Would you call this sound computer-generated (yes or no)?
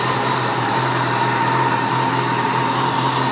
no